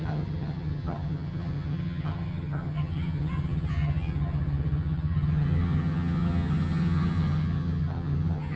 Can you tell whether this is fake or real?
fake